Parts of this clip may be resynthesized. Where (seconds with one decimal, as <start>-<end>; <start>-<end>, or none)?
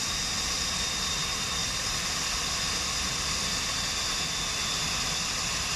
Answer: none